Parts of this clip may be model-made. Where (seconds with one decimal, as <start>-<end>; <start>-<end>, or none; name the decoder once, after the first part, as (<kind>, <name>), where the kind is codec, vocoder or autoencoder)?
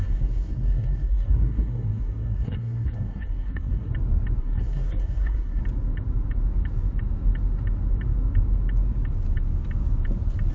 0.0-3.9 (codec, SNAC); 4.4-5.6